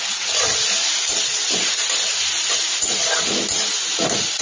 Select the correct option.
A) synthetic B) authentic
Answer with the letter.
B